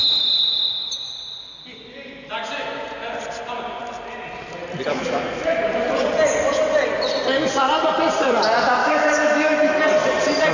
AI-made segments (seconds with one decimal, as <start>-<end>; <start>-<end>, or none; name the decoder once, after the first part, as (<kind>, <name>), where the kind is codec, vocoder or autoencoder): 4.9-5.6 (autoencoder, DAC-VAE); 8.8-9.8